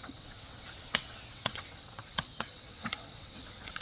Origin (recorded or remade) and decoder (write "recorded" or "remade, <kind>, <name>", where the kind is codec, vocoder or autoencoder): remade, vocoder, WaveNeXt